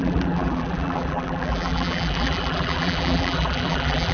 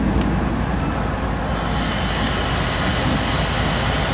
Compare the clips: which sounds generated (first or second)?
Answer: first